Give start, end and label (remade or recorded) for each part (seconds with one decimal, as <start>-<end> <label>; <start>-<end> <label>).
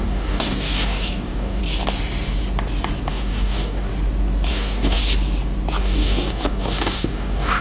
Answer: 0.0-1.6 remade; 1.6-3.1 recorded; 3.1-3.9 remade; 3.9-4.5 recorded; 4.5-5.0 remade; 5.0-5.8 recorded; 5.8-7.6 remade